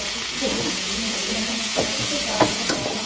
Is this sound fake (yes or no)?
yes